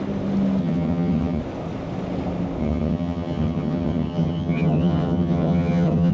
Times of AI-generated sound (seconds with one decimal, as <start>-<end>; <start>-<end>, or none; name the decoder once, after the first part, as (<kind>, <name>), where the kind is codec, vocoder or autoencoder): 0.6-1.4 (vocoder, HiFi-GAN); 2.6-6.1